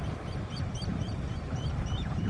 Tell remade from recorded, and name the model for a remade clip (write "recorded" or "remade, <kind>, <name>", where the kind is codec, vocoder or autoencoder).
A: remade, vocoder, BigVGAN v2